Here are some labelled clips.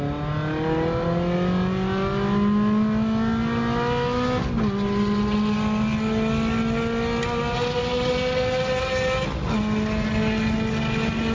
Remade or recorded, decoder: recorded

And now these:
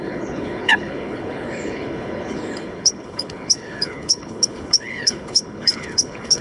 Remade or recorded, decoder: remade, codec, HILCodec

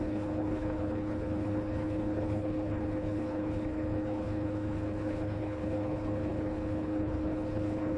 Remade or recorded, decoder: remade, codec, HILCodec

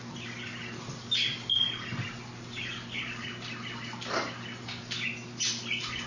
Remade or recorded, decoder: recorded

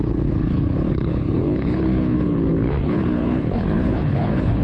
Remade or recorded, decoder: remade, codec, HILCodec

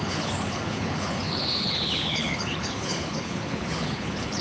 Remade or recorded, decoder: remade, codec, HILCodec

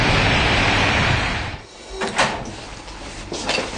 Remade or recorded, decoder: recorded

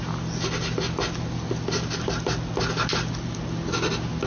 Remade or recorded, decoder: recorded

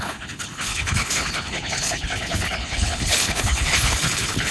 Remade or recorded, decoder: remade, codec, HILCodec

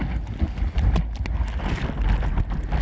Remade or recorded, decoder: recorded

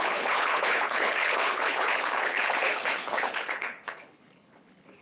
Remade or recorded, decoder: remade, codec, HILCodec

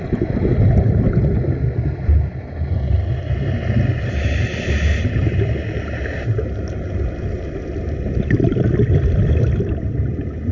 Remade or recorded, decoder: recorded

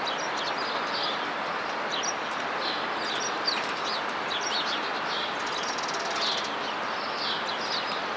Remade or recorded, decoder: recorded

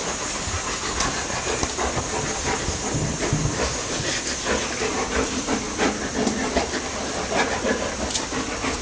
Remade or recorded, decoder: recorded